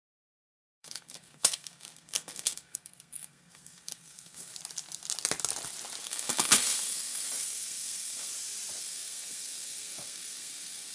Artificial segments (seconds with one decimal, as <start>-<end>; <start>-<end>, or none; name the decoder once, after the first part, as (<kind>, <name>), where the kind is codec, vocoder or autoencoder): 0.0-4.5 (codec, SNAC); 6.0-8.3; 8.8-10.9